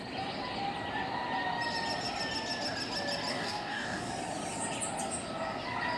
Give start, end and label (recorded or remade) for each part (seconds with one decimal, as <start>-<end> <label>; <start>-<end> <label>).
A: 0.0-3.3 recorded; 3.3-4.1 remade; 4.1-6.0 recorded